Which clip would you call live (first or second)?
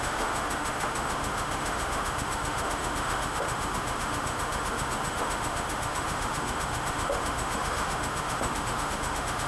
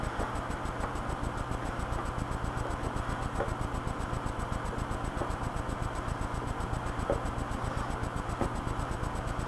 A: second